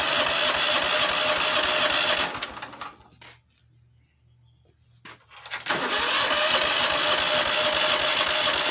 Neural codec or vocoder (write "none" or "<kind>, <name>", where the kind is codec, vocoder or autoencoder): none